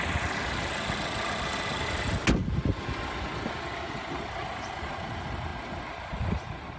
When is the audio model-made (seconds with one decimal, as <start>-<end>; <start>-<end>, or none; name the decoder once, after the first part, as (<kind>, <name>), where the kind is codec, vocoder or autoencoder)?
none